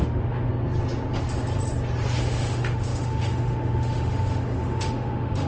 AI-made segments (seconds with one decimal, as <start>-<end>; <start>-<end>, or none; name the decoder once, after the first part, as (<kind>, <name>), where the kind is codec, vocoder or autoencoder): 0.0-0.5 (autoencoder, DAC-VAE); 2.2-5.5